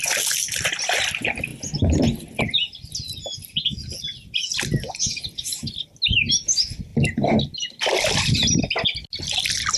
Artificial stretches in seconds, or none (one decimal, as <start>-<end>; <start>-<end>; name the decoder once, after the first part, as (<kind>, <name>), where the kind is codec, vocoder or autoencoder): 6.9-8.6 (vocoder, BigVGAN v2)